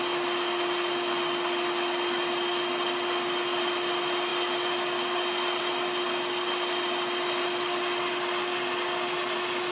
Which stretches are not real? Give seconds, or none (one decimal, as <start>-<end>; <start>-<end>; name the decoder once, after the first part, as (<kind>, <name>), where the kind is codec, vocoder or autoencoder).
none